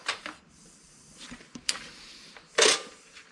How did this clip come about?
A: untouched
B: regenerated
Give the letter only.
B